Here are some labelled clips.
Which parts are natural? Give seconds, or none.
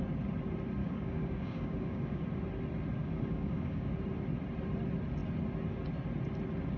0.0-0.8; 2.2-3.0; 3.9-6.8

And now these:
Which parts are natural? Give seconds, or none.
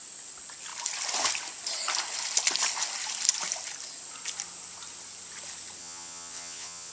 0.0-5.8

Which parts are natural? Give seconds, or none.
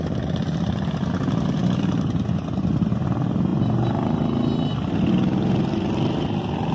0.0-6.7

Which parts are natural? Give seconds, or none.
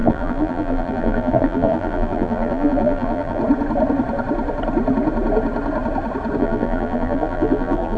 3.4-6.4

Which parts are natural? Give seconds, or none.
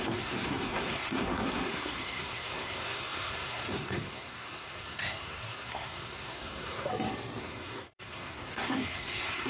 6.9-7.4